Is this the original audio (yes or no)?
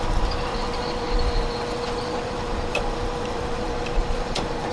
no